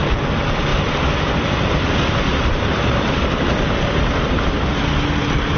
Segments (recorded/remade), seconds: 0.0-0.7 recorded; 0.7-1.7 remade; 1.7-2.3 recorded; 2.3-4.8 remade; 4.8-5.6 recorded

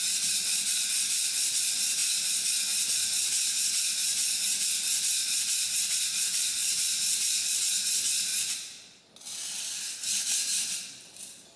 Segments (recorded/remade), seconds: 0.0-2.0 recorded; 2.0-3.7 remade; 3.7-6.6 recorded; 6.6-7.6 remade; 7.6-8.3 recorded; 8.3-9.0 remade; 9.0-11.6 recorded